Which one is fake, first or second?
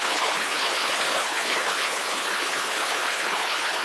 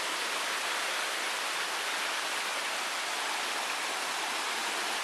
first